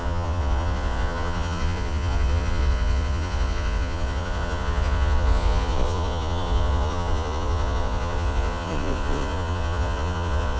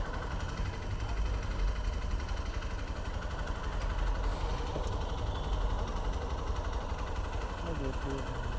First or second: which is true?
second